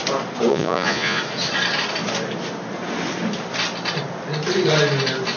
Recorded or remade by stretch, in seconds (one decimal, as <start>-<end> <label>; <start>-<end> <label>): 0.0-0.5 recorded; 0.5-1.2 remade; 1.2-5.4 recorded